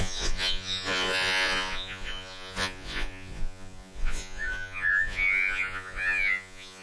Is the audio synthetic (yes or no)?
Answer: yes